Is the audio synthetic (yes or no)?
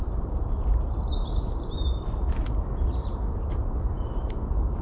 no